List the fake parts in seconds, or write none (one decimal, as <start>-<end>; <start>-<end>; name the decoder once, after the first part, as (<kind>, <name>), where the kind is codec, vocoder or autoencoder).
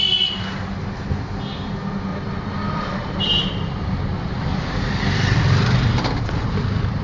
2.1-6.2 (vocoder, BigVGAN v2)